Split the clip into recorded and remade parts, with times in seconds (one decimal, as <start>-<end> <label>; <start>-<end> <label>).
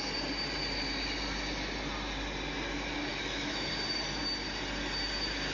0.0-3.1 recorded; 3.1-3.7 remade; 3.7-5.5 recorded